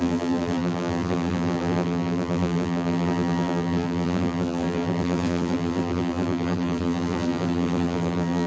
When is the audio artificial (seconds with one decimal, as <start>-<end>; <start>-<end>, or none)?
0.0-8.5